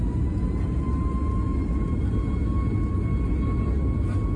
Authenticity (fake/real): real